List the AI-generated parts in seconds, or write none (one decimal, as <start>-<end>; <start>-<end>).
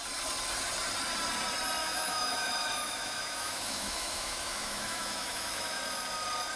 1.8-5.8